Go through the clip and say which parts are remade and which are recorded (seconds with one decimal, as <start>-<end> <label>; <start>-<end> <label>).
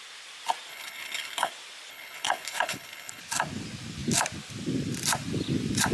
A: 0.0-0.7 recorded; 0.7-1.5 remade; 1.5-1.9 recorded; 1.9-3.2 remade; 3.2-5.9 recorded